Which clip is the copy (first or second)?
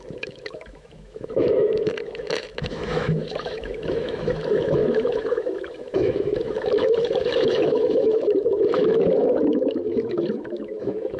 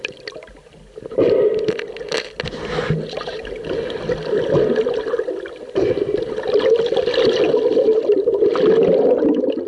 first